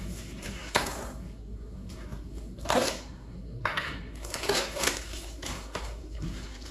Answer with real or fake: fake